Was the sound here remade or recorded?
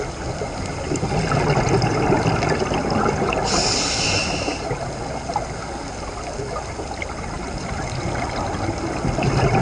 recorded